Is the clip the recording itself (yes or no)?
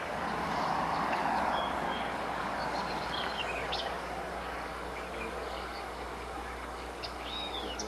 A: no